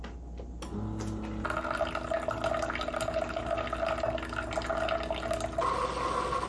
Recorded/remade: recorded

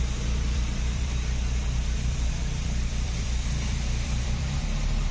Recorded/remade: remade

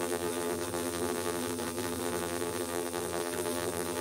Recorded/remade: remade